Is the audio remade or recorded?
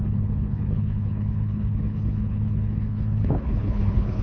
remade